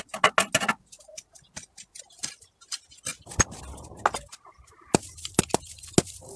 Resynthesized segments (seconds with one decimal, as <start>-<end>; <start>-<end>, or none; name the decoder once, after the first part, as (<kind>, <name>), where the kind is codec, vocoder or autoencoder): none